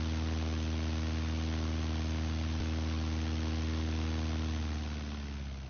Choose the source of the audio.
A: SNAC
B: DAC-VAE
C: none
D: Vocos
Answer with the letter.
C